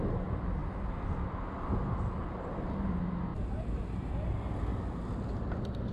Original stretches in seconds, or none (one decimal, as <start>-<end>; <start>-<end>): 0.0-3.3; 4.1-5.9